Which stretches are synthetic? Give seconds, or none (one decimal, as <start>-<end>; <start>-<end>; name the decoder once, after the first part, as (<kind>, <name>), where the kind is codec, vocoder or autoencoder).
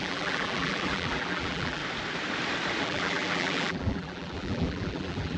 0.0-1.8 (vocoder, BigVGAN v2); 2.8-5.4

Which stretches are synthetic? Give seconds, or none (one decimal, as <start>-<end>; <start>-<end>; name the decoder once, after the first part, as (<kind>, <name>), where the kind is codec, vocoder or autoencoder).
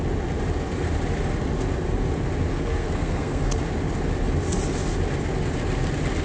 2.5-3.6 (codec, SNAC)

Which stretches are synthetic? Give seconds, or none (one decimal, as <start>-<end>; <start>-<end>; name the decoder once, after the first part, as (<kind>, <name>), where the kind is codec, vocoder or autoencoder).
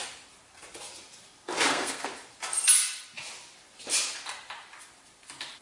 1.7-2.1 (codec, SNAC)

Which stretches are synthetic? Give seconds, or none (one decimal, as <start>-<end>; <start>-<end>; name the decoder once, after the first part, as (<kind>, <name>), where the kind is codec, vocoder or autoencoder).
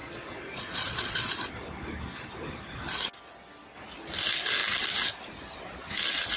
0.0-1.5 (vocoder, Vocos)